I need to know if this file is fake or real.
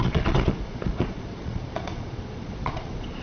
fake